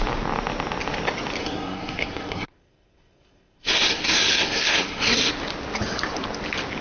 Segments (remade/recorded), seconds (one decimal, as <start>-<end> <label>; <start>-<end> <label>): 0.0-1.4 recorded; 1.4-5.3 remade; 5.3-6.8 recorded